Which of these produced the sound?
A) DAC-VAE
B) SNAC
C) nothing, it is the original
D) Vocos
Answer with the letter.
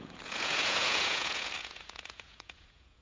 D